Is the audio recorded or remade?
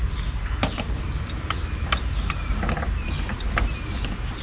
recorded